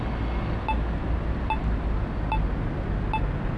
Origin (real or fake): real